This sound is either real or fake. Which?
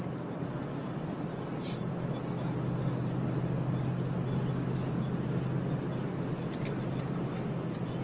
real